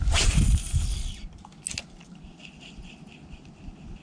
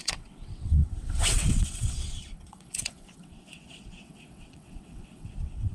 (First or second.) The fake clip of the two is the second